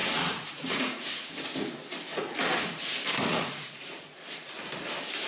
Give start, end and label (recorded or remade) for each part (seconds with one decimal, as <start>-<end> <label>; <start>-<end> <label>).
0.0-1.3 remade; 1.3-3.3 recorded; 3.3-4.5 remade; 4.5-5.3 recorded